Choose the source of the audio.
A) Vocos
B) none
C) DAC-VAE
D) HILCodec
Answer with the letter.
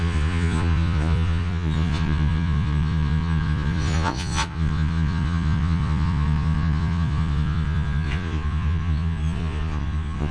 A